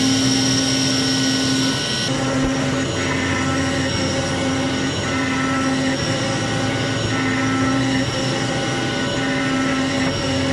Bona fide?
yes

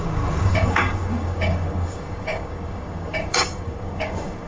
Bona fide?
no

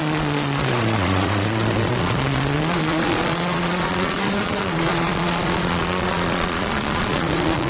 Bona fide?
no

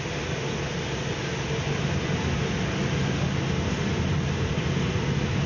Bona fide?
yes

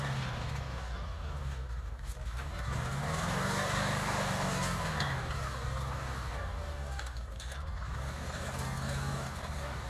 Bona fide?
no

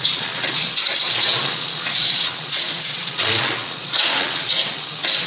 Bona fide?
no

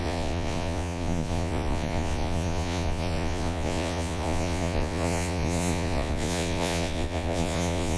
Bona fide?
no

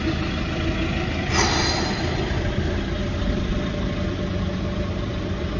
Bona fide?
yes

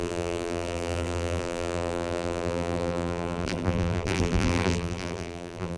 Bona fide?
no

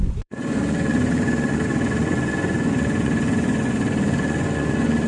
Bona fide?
no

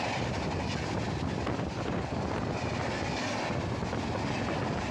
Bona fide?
yes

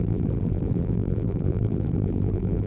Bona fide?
no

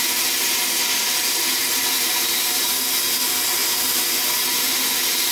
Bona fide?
yes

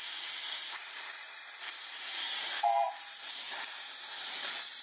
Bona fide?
no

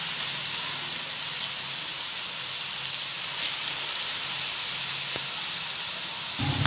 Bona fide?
yes